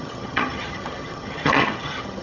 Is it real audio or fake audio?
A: fake